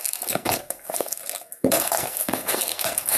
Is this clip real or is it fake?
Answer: fake